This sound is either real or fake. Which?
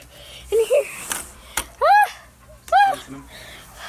real